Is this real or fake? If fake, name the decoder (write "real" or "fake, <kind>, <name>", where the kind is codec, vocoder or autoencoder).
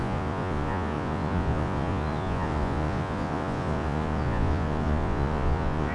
fake, vocoder, Vocos